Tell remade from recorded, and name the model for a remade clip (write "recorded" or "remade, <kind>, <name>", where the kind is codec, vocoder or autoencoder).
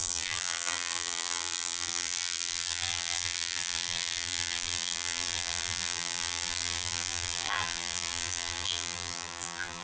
remade, vocoder, BigVGAN v2